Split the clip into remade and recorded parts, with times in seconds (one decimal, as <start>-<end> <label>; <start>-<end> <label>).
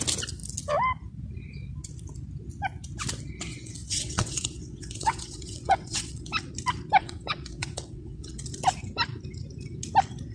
0.0-3.5 recorded; 3.5-6.3 remade; 6.3-7.0 recorded; 7.0-8.4 remade; 8.4-10.3 recorded